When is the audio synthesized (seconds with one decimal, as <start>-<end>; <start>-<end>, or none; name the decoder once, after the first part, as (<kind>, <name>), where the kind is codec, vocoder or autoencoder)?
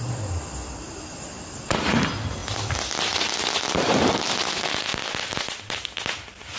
none